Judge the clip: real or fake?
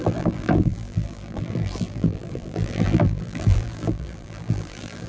fake